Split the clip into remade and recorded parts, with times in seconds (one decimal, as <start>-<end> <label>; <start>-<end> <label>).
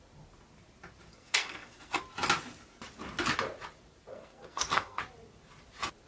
0.0-1.1 recorded; 1.1-2.0 remade; 2.0-4.1 recorded; 4.1-5.0 remade; 5.0-6.1 recorded